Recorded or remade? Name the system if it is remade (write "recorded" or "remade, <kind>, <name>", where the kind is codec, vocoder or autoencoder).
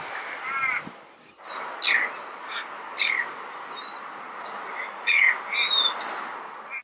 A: recorded